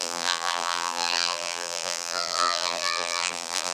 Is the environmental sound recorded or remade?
remade